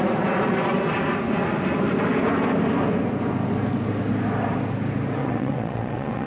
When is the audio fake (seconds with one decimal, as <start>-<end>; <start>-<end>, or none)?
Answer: 5.2-6.3